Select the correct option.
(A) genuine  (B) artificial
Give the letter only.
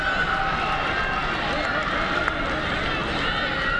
A